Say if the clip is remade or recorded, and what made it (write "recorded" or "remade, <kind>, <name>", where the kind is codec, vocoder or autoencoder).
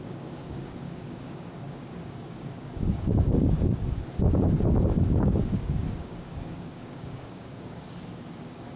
remade, codec, DAC